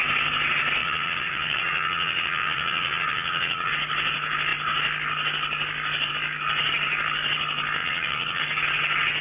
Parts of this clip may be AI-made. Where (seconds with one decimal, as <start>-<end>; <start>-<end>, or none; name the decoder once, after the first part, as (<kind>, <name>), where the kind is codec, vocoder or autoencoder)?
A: 0.8-3.7 (vocoder, Vocos); 7.8-8.4